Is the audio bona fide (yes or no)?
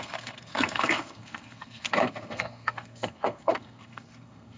no